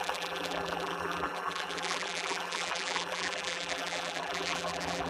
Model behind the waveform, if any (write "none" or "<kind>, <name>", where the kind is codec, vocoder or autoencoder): vocoder, BigVGAN v2